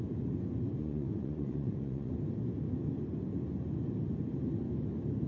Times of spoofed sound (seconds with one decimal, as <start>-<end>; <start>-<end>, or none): 0.8-2.1